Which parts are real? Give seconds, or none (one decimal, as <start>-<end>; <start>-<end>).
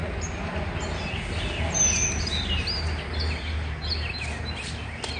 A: 0.0-5.2